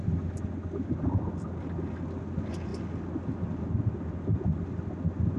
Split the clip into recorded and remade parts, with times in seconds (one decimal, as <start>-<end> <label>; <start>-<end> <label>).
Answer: 0.0-5.4 recorded